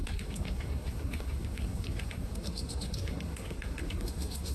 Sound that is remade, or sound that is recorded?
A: remade